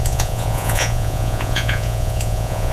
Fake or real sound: fake